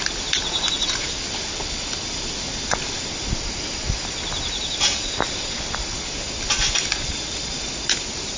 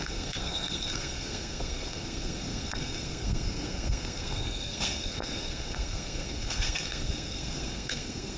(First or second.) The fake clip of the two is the second